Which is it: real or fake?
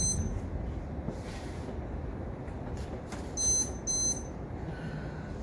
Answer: real